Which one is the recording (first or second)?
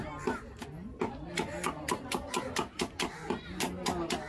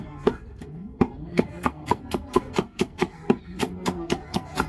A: first